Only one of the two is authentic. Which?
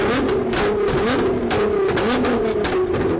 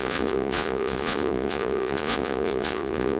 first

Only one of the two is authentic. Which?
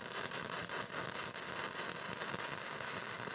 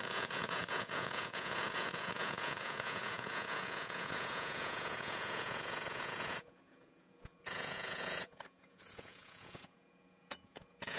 first